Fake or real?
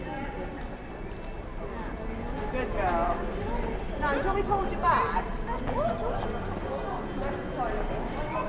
real